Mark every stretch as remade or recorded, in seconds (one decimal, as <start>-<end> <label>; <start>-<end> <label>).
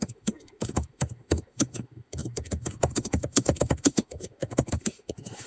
0.0-5.5 remade